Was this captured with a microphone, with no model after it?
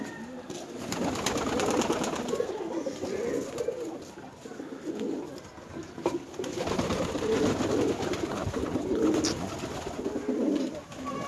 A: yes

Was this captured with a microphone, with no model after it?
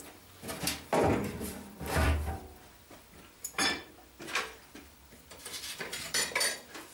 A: no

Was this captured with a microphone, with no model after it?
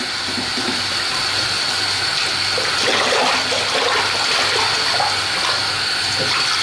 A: yes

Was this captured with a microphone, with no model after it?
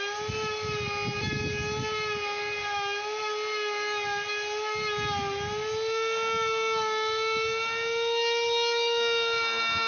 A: yes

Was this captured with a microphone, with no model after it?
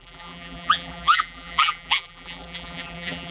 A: no